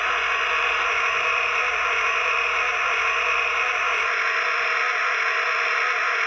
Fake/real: fake